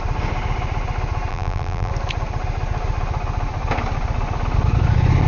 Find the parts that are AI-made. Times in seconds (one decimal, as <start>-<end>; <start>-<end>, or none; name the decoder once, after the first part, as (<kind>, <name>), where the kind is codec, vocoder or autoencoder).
1.3-1.9 (vocoder, BigVGAN v2)

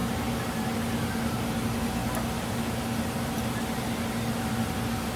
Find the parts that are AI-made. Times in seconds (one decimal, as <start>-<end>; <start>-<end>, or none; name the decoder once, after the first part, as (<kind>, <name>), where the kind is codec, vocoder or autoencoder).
0.0-0.8 (vocoder, BigVGAN v2)

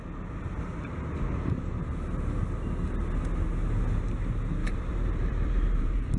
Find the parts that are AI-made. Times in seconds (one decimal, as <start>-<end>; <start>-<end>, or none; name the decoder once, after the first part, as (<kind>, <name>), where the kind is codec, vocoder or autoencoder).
4.6-6.2 (vocoder, BigVGAN v2)

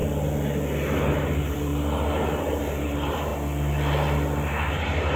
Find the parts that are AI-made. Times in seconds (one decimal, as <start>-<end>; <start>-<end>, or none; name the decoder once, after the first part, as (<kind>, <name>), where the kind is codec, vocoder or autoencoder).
1.2-1.7 (vocoder, BigVGAN v2); 2.2-3.3; 4.7-5.2

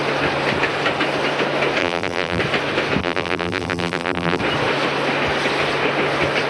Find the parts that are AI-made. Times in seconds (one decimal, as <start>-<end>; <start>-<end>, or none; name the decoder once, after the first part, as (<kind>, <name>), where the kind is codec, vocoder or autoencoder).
1.8-2.4 (vocoder, BigVGAN v2); 3.0-4.4